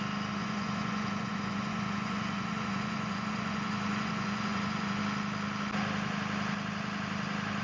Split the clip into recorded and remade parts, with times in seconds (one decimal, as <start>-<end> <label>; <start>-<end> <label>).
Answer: 0.0-0.4 recorded; 0.4-5.0 remade; 5.0-7.6 recorded